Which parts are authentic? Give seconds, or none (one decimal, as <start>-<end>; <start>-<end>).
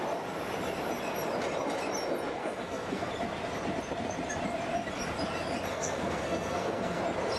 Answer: 0.0-2.4; 3.1-5.7; 7.0-7.4